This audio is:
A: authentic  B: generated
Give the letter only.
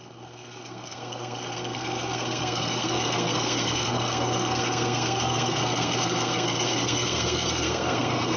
B